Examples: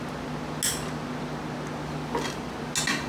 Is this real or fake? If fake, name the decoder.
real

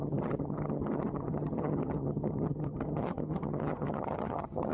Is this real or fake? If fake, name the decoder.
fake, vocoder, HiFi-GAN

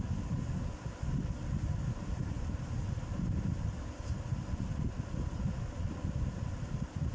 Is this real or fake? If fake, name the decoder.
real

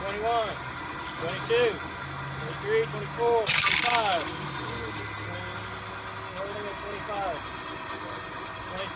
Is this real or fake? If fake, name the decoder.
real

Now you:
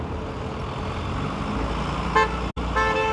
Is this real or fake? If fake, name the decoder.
real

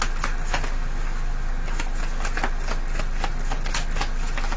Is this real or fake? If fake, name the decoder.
real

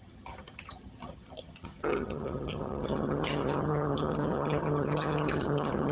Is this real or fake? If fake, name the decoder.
fake, vocoder, HiFi-GAN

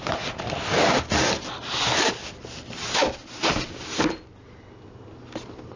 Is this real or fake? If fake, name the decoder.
real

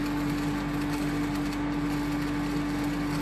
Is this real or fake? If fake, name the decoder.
real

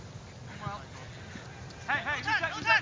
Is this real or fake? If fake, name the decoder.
real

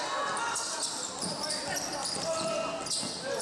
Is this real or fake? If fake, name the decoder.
real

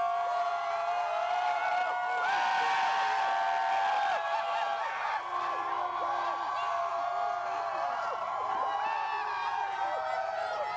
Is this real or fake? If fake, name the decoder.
real